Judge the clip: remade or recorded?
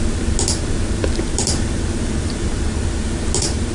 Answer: recorded